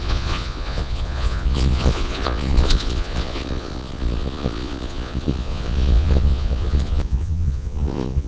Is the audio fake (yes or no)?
yes